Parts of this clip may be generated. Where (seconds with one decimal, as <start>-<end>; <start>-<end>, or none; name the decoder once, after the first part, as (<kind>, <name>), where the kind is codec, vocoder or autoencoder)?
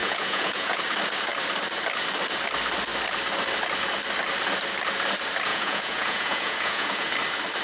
0.0-0.8 (vocoder, Vocos); 5.5-7.1